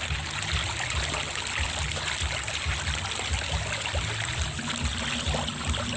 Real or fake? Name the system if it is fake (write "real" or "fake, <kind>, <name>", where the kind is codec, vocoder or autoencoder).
real